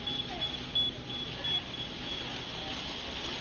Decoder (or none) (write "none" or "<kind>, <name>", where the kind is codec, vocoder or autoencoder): none